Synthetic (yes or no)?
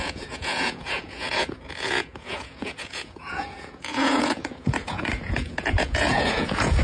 yes